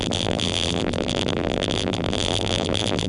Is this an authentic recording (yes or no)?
no